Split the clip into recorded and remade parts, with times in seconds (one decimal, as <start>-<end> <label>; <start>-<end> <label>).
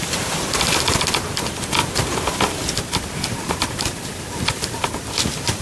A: 0.0-5.6 recorded